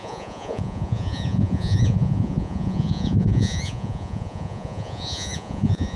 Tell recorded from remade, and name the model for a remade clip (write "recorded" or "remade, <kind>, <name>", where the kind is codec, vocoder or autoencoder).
remade, vocoder, Vocos